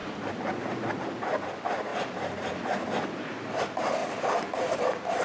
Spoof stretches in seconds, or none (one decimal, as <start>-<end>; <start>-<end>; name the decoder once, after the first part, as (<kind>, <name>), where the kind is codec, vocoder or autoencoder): 0.0-0.9 (vocoder, BigVGAN v2); 1.9-3.3; 4.0-4.8